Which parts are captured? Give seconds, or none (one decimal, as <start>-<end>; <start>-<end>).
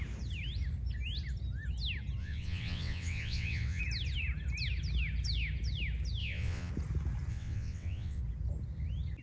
0.0-2.2; 3.8-6.2; 6.7-7.3; 8.2-9.2